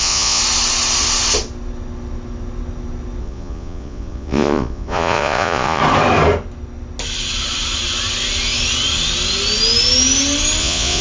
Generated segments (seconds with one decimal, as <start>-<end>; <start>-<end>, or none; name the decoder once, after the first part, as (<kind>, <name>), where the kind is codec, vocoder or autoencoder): 0.0-0.4 (vocoder, Vocos); 3.2-5.8; 10.6-11.0